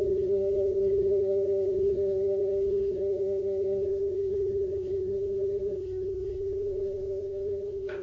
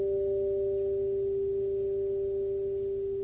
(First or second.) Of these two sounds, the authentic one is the second